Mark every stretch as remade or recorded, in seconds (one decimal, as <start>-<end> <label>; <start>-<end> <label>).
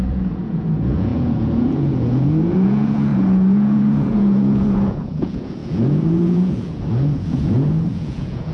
0.0-8.5 remade